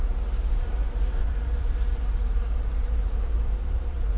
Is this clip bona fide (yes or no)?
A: no